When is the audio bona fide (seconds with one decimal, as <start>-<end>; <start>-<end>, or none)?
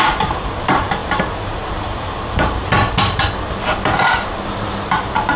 2.8-3.5